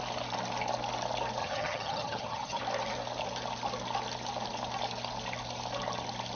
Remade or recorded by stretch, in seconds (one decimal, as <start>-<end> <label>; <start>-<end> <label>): 0.0-1.4 recorded; 1.4-2.6 remade; 2.6-6.4 recorded